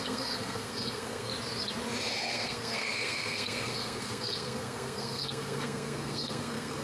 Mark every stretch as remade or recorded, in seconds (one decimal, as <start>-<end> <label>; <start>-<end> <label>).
0.0-1.3 remade; 1.3-2.3 recorded; 2.3-6.8 remade